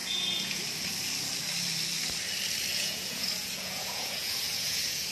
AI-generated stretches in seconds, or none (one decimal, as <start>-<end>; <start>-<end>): 0.0-0.6; 2.7-5.1